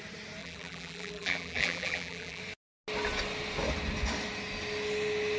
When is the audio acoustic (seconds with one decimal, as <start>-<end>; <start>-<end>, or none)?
0.0-0.4; 2.4-5.4